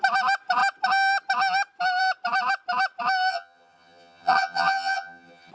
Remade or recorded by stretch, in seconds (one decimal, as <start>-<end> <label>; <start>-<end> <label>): 0.0-3.3 recorded; 3.3-5.5 remade